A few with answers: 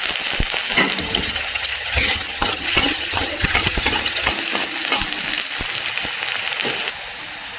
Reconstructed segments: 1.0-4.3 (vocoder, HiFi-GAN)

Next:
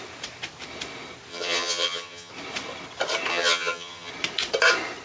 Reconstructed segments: 1.3-2.3 (vocoder, HiFi-GAN); 3.3-4.1

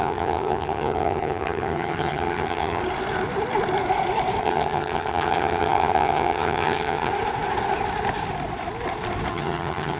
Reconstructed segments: 0.0-2.8 (vocoder, HiFi-GAN); 4.4-7.1; 9.3-10.0

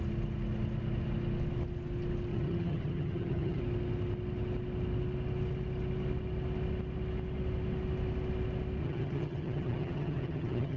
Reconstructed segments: 2.3-3.6 (vocoder, HiFi-GAN); 8.8-10.8

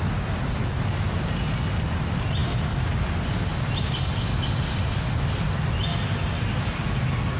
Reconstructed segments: none